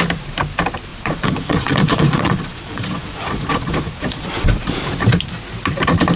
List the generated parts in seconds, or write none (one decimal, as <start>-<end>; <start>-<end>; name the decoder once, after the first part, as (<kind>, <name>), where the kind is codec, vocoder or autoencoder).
0.9-4.6 (vocoder, Vocos)